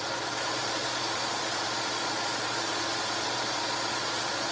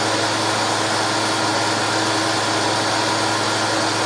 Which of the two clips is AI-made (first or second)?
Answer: first